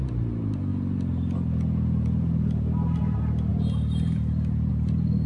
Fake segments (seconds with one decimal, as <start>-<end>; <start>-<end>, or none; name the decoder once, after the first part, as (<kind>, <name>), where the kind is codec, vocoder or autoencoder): none